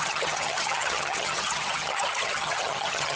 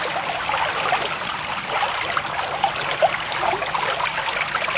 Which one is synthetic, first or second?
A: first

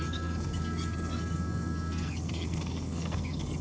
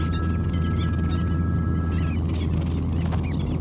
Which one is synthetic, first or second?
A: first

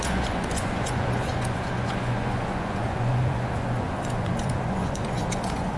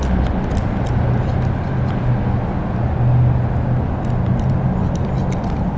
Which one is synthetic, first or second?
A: first